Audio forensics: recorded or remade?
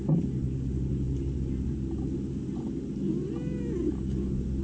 recorded